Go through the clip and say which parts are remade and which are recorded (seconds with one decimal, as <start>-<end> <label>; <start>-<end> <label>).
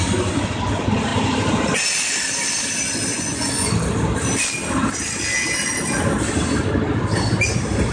0.0-3.1 recorded; 3.1-3.7 remade; 3.7-7.9 recorded